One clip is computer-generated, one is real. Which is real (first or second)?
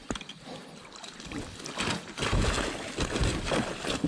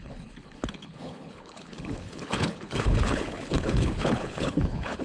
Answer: first